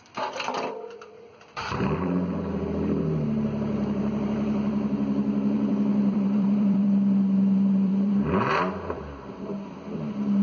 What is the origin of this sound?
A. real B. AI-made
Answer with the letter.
B